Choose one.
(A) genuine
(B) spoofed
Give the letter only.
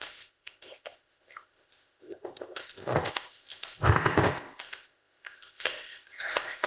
B